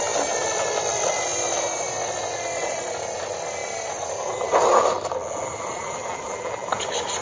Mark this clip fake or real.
real